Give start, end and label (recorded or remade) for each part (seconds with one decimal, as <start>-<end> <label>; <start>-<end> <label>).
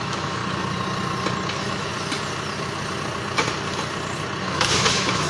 0.0-0.4 remade; 0.4-1.5 recorded; 1.5-1.9 remade; 1.9-4.4 recorded; 4.4-5.3 remade